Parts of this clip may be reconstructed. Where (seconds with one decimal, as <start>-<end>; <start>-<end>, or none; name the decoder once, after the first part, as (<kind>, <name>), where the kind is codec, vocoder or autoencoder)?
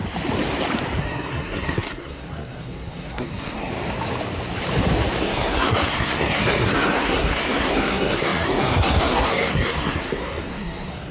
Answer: 1.0-3.7 (codec, SNAC); 5.2-11.1